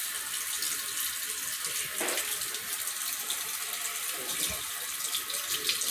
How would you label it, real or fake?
fake